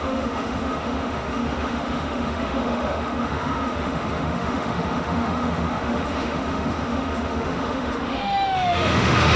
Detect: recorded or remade remade